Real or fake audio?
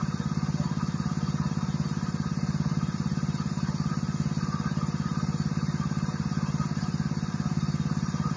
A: real